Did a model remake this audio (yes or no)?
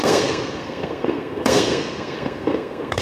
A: yes